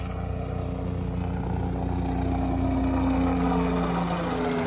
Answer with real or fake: real